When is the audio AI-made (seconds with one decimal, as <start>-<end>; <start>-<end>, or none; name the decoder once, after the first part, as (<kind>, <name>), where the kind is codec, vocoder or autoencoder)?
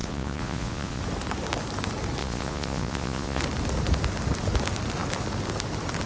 0.0-1.0 (vocoder, Vocos); 2.2-3.4